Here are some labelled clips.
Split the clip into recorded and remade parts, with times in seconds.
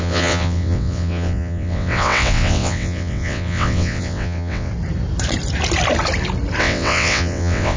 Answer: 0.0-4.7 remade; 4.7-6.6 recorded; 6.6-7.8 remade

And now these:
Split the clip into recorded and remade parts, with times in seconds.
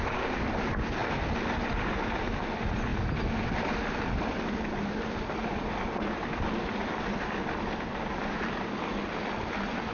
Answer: 0.0-9.9 recorded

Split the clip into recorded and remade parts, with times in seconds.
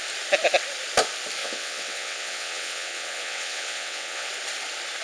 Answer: 0.0-1.4 recorded; 1.4-4.3 remade; 4.3-5.0 recorded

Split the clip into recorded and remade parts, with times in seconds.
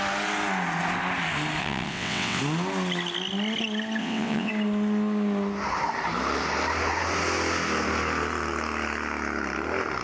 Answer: 0.0-1.6 recorded; 1.6-2.4 remade; 2.4-4.0 recorded; 4.0-4.5 remade; 4.5-10.0 recorded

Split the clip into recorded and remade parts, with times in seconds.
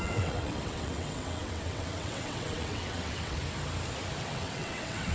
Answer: 0.0-3.4 remade; 3.4-4.2 recorded; 4.2-5.1 remade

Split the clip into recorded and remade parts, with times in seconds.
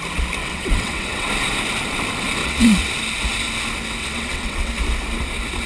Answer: 0.0-0.4 recorded; 0.4-1.3 remade; 1.3-2.4 recorded; 2.4-2.9 remade; 2.9-4.0 recorded; 4.0-4.7 remade; 4.7-5.7 recorded